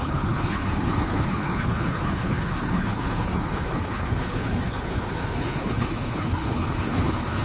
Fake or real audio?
fake